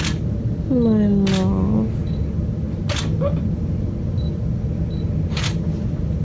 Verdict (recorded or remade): recorded